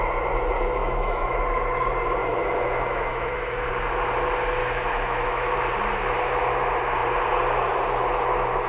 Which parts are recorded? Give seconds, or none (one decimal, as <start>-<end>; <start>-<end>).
0.0-0.8; 1.4-2.2; 3.7-4.6; 5.6-8.7